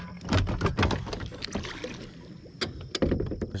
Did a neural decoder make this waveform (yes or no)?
no